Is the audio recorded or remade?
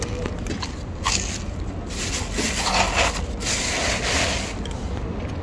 recorded